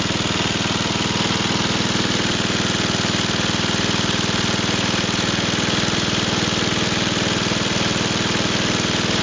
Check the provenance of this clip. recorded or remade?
remade